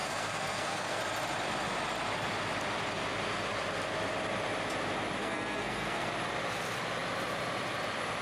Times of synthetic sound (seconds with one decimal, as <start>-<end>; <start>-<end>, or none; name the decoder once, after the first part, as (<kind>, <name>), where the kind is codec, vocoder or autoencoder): 0.0-1.0 (codec, SNAC); 5.2-6.1